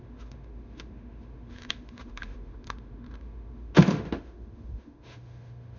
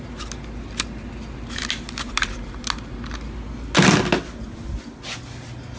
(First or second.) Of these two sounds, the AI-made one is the first